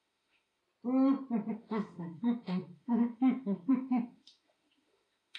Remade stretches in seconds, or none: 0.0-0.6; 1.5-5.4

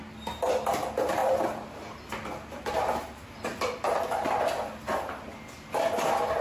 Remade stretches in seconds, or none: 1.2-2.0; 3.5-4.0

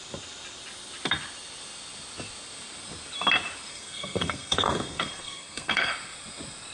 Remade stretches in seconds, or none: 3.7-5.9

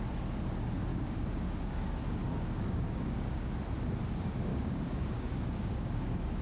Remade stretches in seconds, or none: 0.9-1.8; 2.2-3.5; 4.5-6.4

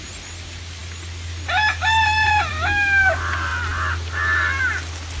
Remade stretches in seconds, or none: none